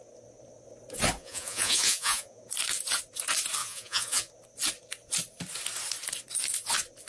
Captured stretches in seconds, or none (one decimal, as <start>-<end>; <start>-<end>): 0.0-1.2; 2.4-3.6; 4.3-7.1